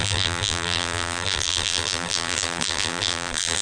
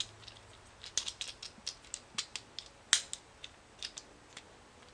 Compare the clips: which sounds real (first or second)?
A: second